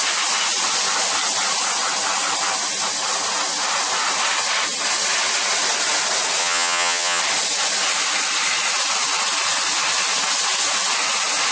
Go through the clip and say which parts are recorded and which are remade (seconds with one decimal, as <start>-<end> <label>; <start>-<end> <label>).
0.0-6.4 recorded; 6.4-7.2 remade; 7.2-11.5 recorded